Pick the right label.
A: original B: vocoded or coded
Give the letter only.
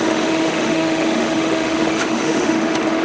B